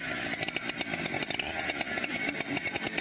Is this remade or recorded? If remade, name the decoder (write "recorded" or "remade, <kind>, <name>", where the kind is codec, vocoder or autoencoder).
recorded